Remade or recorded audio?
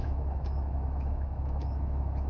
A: remade